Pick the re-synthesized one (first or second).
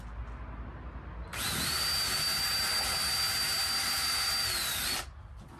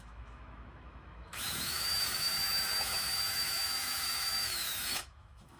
second